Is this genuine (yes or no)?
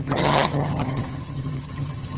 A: no